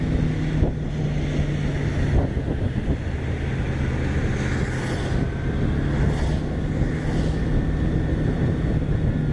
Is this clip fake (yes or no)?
no